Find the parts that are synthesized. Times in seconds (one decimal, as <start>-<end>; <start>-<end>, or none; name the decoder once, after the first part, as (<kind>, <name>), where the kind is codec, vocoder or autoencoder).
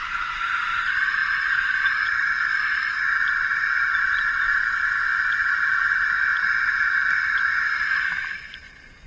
1.2-2.5 (vocoder, BigVGAN v2)